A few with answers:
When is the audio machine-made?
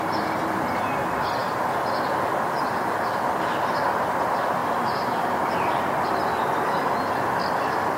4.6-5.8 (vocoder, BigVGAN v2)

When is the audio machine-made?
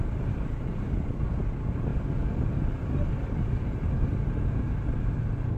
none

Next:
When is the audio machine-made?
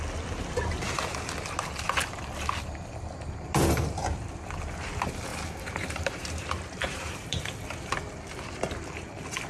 5.3-7.4 (vocoder, BigVGAN v2)